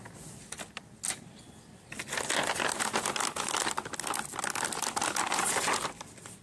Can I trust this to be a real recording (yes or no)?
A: yes